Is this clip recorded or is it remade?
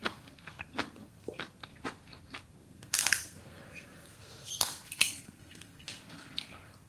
remade